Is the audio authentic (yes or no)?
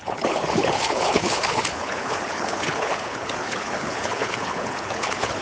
no